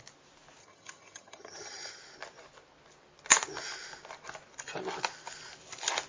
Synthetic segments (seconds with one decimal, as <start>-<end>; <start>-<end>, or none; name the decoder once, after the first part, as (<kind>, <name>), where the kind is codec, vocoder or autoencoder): 0.6-2.0 (vocoder, HiFi-GAN)